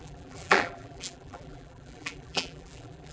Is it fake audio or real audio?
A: fake